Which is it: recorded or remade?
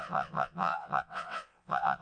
remade